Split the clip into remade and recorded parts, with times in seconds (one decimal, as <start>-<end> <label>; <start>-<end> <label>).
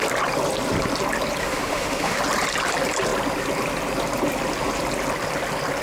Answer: 0.0-1.4 recorded; 1.4-2.2 remade; 2.2-5.8 recorded